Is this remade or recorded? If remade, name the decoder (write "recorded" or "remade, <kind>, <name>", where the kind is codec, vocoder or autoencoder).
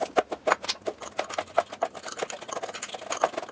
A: recorded